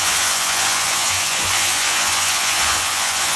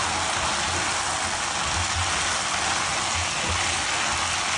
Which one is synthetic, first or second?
first